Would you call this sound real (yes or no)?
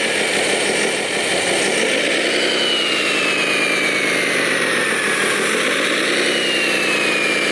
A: yes